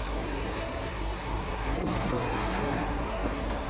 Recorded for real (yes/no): no